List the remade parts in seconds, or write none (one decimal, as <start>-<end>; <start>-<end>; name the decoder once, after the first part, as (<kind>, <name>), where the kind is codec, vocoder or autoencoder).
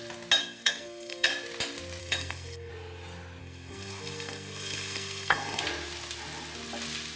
0.4-1.3 (codec, SNAC); 2.0-2.7; 3.4-5.6